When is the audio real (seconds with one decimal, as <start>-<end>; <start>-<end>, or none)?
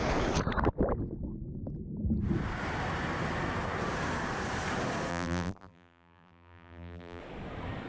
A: 0.0-5.1; 7.2-7.9